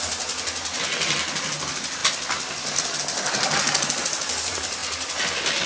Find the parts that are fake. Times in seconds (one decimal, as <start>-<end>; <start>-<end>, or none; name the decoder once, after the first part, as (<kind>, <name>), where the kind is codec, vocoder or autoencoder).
none